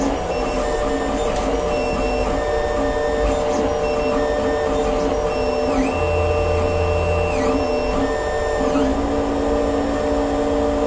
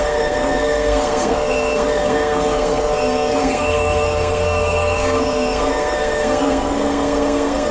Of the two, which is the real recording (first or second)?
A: first